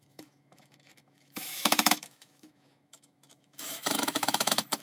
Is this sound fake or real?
fake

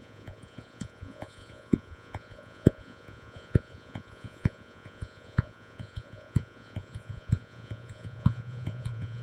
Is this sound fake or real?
fake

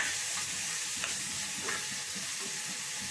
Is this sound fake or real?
fake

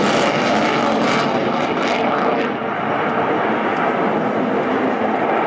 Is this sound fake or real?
real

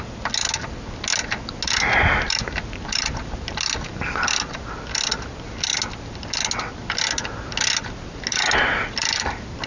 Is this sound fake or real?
real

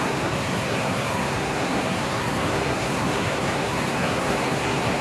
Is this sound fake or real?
fake